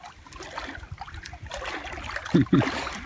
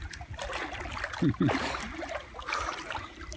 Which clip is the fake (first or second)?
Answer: first